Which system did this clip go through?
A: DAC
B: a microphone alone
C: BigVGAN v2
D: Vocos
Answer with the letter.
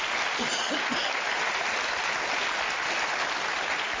B